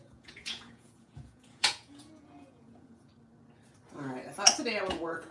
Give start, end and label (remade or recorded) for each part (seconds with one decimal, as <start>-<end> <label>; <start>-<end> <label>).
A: 0.0-3.1 remade; 3.1-4.8 recorded; 4.8-5.3 remade